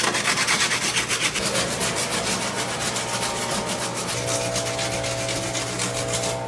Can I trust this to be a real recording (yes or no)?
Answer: yes